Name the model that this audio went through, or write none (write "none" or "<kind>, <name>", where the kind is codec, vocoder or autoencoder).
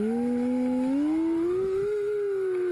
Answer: autoencoder, DAC-VAE